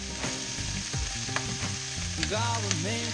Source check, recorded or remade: recorded